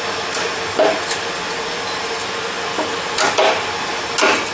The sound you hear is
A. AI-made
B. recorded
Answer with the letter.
B